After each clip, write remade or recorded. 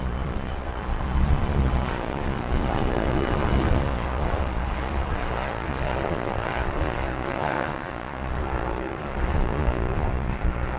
remade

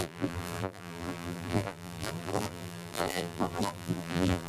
remade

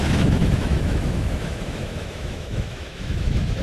remade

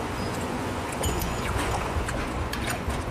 remade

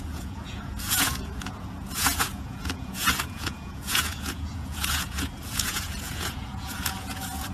remade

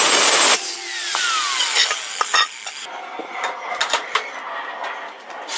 recorded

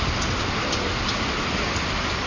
recorded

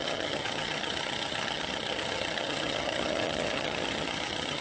remade